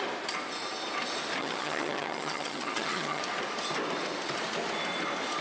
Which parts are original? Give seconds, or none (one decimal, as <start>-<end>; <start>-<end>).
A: 0.0-1.4; 3.2-5.4